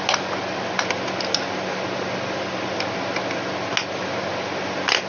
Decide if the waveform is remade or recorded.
recorded